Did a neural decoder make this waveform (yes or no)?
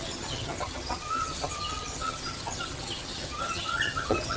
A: yes